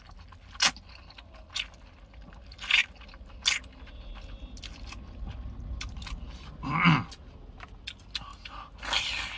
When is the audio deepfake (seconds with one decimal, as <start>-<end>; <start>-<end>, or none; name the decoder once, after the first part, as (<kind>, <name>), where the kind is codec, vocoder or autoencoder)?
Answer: none